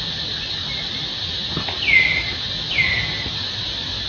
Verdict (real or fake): real